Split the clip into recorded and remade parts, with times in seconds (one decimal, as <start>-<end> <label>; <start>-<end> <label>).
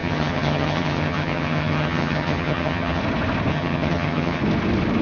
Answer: 0.0-3.0 remade; 3.0-3.5 recorded; 3.5-4.4 remade; 4.4-5.0 recorded